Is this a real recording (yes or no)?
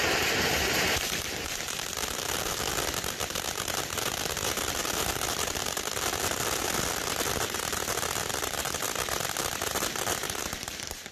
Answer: no